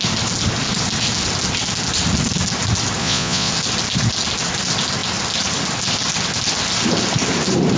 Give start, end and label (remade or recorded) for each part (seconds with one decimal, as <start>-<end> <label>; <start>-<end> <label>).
0.0-3.0 recorded; 3.0-3.5 remade; 3.5-7.8 recorded